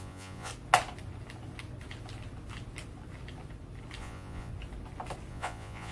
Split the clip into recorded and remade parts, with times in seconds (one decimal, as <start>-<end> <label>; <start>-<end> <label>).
0.0-0.5 remade; 0.5-4.0 recorded; 4.0-4.5 remade; 4.5-5.3 recorded; 5.3-5.9 remade